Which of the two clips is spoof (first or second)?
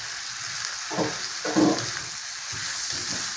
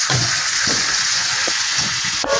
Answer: second